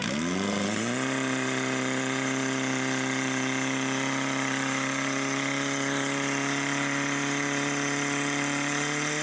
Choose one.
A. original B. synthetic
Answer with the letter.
B